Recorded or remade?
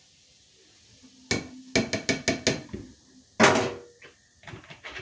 recorded